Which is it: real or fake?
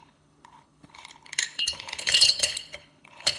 fake